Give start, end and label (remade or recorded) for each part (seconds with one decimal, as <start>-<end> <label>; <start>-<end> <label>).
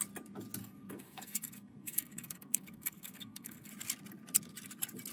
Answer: 0.0-0.6 recorded; 0.6-3.7 remade; 3.7-5.1 recorded